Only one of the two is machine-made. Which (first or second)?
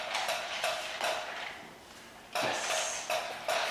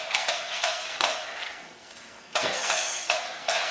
second